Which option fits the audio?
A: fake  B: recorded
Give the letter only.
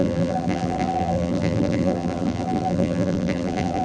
A